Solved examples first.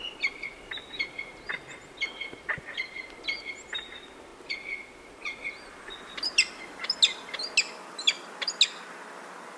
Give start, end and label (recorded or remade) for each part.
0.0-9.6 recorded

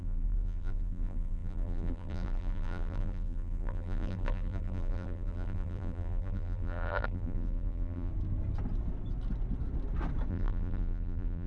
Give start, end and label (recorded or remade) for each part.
0.0-8.1 remade; 8.1-10.3 recorded; 10.3-11.5 remade